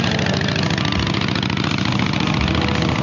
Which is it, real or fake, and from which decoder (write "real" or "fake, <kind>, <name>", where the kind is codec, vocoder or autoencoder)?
real